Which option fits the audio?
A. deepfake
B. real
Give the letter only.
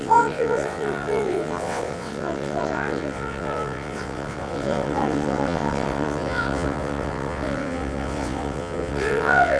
A